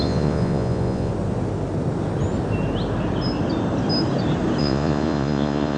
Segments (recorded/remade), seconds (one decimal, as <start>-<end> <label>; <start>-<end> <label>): 0.0-1.1 remade; 1.1-4.6 recorded; 4.6-5.8 remade